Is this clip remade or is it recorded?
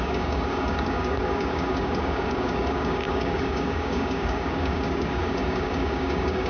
remade